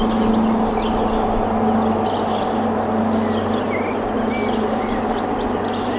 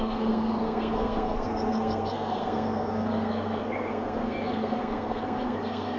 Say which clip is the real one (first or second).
first